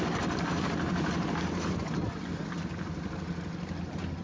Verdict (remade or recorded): remade